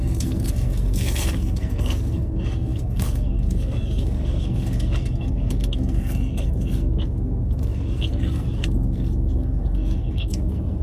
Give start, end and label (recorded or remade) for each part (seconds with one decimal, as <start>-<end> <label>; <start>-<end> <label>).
0.0-10.8 remade